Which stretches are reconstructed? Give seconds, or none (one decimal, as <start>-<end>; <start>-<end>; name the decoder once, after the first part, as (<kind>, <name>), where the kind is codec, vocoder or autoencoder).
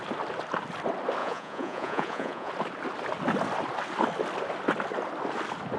1.2-2.5 (vocoder, Vocos)